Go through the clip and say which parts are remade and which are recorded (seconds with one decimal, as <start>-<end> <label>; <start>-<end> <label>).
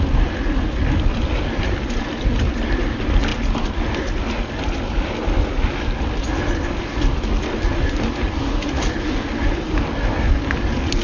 0.0-11.0 recorded